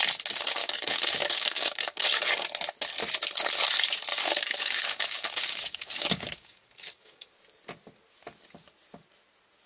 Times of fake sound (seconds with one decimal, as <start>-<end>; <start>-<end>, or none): 0.6-2.3; 4.1-7.3